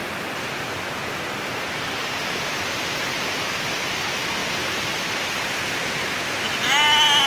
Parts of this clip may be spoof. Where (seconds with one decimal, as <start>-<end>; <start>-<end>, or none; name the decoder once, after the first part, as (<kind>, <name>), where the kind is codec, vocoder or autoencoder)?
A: none

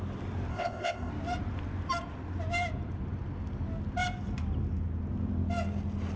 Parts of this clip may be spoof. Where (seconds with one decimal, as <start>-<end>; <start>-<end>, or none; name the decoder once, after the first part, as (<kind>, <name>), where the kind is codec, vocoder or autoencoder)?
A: 0.5-1.1 (codec, ZipCodec)

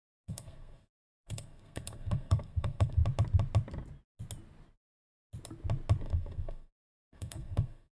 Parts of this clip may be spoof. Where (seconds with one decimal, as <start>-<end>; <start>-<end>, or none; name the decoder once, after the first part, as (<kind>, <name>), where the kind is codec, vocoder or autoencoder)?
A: 0.0-3.0 (codec, SNAC); 6.0-7.9

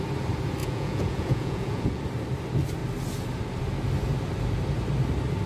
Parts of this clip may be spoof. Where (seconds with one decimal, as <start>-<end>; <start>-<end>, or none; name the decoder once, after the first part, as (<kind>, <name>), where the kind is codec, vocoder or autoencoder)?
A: 0.6-2.0 (vocoder, Vocos)

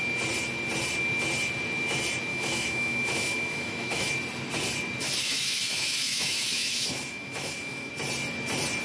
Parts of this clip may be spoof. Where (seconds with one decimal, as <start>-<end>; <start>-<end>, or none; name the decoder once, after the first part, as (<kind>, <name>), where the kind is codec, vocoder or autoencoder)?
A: 2.3-4.1 (autoencoder, DAC-VAE); 5.2-7.9